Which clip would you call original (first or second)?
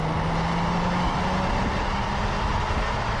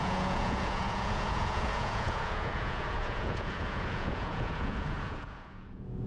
first